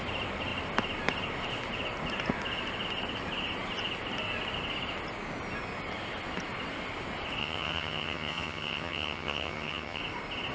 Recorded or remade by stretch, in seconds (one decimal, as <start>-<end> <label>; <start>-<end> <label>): 0.0-7.4 recorded; 7.4-10.0 remade; 10.0-10.5 recorded

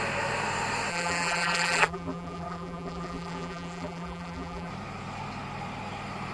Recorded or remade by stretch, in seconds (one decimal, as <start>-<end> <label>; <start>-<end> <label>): 0.0-0.9 recorded; 0.9-4.7 remade; 4.7-6.3 recorded

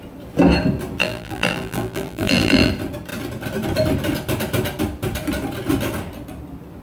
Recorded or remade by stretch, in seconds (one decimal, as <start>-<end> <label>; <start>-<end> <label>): 0.0-1.0 recorded; 1.0-2.7 remade; 2.7-6.8 recorded

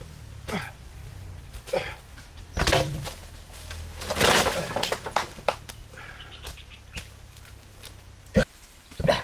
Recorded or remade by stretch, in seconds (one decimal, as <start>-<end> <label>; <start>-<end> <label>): 0.0-1.0 remade; 1.0-2.4 recorded; 2.4-9.2 remade

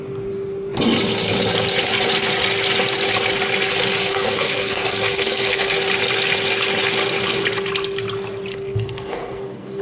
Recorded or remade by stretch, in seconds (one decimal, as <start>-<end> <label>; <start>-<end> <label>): 0.0-4.0 recorded; 4.0-5.8 remade; 5.8-8.5 recorded; 8.5-9.8 remade

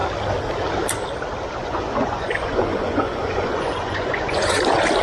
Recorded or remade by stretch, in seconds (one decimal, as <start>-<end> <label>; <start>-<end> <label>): 0.0-1.6 recorded; 1.6-4.6 remade; 4.6-5.0 recorded

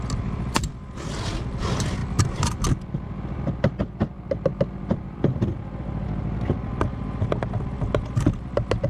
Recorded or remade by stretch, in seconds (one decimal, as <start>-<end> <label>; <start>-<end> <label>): 0.0-2.0 recorded; 2.0-2.5 remade; 2.5-4.5 recorded; 4.5-5.6 remade; 5.6-8.9 recorded